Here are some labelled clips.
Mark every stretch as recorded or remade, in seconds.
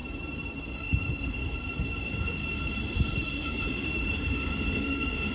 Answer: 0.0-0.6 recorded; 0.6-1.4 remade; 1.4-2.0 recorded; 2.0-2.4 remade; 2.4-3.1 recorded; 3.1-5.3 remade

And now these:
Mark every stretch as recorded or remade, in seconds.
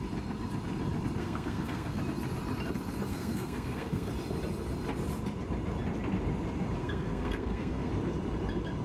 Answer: 0.0-1.2 recorded; 1.2-2.0 remade; 2.0-3.1 recorded; 3.1-4.1 remade; 4.1-6.8 recorded; 6.8-7.9 remade; 7.9-8.8 recorded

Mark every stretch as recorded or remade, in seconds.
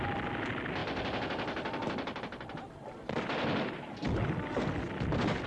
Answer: 0.0-5.5 recorded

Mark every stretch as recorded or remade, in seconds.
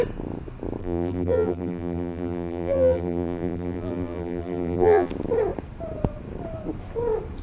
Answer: 0.0-0.8 recorded; 0.8-5.1 remade; 5.1-7.4 recorded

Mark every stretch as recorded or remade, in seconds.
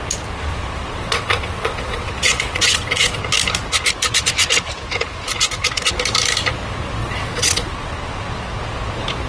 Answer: 0.0-0.5 recorded; 0.5-3.2 remade; 3.2-7.0 recorded; 7.0-8.2 remade; 8.2-9.3 recorded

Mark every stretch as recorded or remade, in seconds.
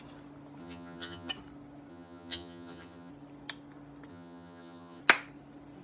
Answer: 0.0-0.6 recorded; 0.6-1.3 remade; 1.3-1.9 recorded; 1.9-3.1 remade; 3.1-4.1 recorded; 4.1-5.0 remade; 5.0-5.8 recorded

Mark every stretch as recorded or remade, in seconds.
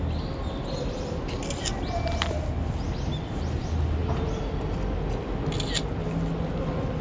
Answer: 0.0-7.0 recorded